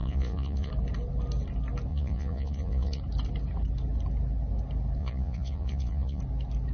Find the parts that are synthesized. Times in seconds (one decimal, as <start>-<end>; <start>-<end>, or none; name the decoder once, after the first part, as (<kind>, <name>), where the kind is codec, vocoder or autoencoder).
0.0-0.7 (vocoder, Vocos); 1.9-3.0; 5.0-6.2